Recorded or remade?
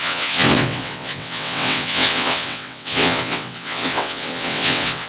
remade